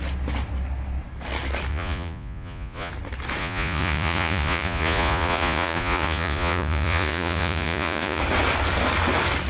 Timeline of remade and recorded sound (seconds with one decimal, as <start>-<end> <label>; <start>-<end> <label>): 0.0-1.7 recorded; 1.7-2.9 remade; 2.9-3.4 recorded; 3.4-8.2 remade; 8.2-9.5 recorded